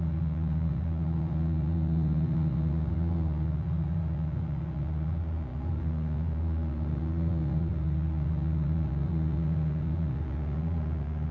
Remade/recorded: remade